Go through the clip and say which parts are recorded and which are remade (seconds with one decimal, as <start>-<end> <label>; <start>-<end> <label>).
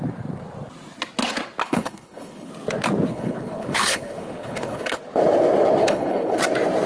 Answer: 0.0-1.6 recorded; 1.6-2.5 remade; 2.5-3.1 recorded; 3.1-5.0 remade; 5.0-5.8 recorded; 5.8-6.4 remade; 6.4-6.9 recorded